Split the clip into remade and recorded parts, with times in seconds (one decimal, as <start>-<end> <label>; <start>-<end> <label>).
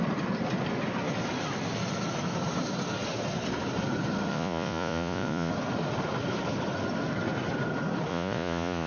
0.0-4.3 recorded; 4.3-5.5 remade; 5.5-8.1 recorded; 8.1-8.9 remade